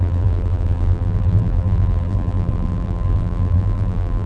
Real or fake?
fake